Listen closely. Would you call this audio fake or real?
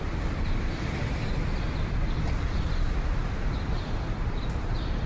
fake